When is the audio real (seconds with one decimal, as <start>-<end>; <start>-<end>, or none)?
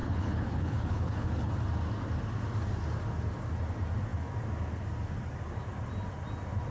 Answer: 1.5-6.7